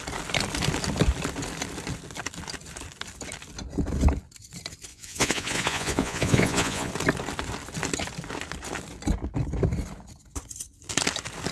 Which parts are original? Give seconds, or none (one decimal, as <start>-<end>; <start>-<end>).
0.0-4.9; 6.9-11.5